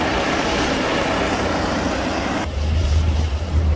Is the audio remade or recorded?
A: remade